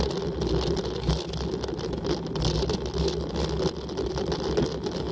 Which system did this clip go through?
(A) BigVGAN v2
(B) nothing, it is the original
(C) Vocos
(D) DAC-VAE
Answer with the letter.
B